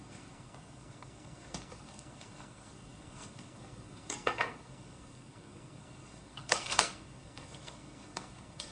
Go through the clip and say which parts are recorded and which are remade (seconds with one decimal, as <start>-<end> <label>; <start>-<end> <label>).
0.0-8.7 remade

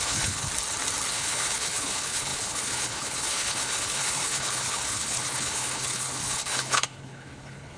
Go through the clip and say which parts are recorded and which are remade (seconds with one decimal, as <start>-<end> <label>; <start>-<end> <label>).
0.0-0.5 remade; 0.5-1.1 recorded; 1.1-7.8 remade

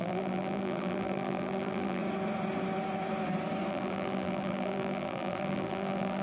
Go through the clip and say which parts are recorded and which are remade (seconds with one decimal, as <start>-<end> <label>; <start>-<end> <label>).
0.0-2.0 remade; 2.0-3.7 recorded; 3.7-6.2 remade

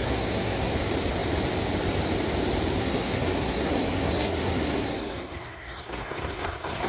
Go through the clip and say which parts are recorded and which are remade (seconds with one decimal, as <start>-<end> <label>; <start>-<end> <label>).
0.0-0.7 remade; 0.7-2.8 recorded; 2.8-6.9 remade